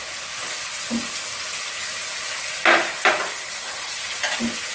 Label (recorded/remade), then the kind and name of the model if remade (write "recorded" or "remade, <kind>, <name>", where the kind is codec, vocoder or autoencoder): recorded